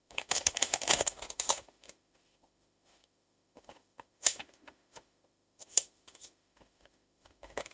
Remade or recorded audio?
remade